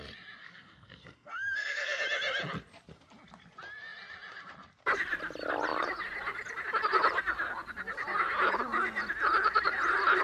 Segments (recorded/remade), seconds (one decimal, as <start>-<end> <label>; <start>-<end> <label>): 0.0-0.4 recorded; 0.4-2.0 remade; 2.0-10.2 recorded